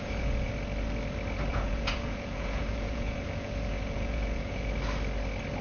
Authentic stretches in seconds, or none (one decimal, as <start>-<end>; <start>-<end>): 0.5-1.5; 4.7-5.6